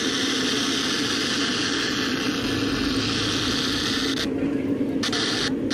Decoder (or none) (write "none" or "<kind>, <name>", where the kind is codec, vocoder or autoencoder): none